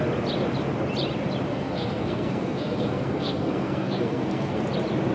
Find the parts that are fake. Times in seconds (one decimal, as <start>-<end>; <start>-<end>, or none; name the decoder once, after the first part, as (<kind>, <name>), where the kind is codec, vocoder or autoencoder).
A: 1.5-4.6 (codec, SNAC)